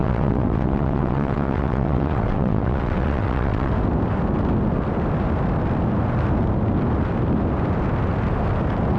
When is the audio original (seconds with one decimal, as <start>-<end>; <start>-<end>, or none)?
3.7-9.0